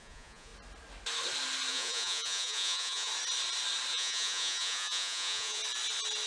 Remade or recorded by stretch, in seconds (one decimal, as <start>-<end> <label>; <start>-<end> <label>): 0.0-0.5 remade; 0.5-1.7 recorded; 1.7-3.1 remade; 3.1-3.9 recorded; 3.9-5.6 remade; 5.6-6.3 recorded